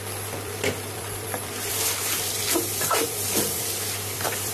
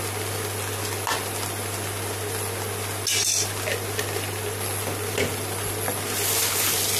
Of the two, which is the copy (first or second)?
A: first